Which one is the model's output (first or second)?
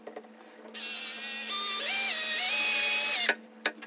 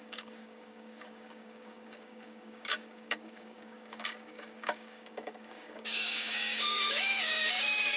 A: second